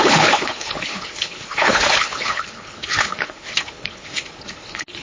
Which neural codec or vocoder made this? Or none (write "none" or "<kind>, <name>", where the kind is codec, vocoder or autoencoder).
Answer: codec, HILCodec